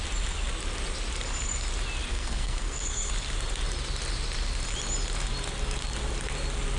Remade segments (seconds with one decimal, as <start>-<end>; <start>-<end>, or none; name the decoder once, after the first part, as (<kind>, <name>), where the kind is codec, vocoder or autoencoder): 2.1-3.1 (codec, SNAC)